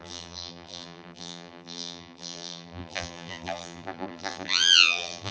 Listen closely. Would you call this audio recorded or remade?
remade